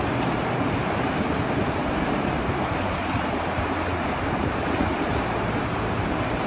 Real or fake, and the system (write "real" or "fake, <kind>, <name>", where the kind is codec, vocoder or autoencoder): fake, vocoder, BigVGAN v2